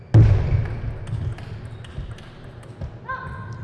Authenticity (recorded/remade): recorded